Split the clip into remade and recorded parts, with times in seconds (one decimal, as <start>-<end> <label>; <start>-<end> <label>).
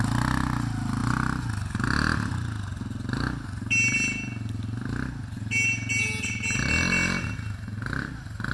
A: 0.0-8.5 recorded